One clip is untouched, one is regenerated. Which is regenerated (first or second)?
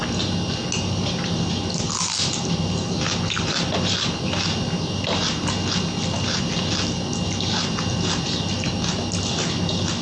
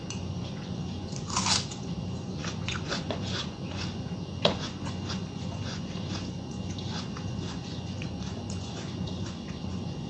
second